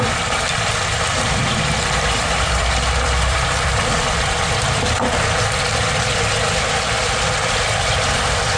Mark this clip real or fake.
fake